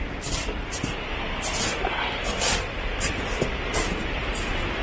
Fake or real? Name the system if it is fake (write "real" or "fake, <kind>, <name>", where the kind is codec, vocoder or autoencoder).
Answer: real